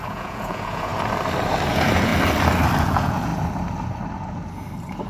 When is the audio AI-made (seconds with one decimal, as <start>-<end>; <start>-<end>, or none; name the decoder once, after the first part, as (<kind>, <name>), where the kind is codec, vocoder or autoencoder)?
0.0-0.9 (vocoder, Vocos); 1.7-2.1; 2.8-3.3